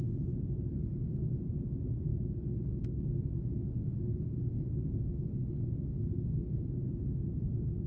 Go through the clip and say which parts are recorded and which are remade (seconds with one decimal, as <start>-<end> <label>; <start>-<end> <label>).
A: 0.0-0.7 recorded; 0.7-1.4 remade; 1.4-2.1 recorded; 2.1-6.7 remade; 6.7-7.9 recorded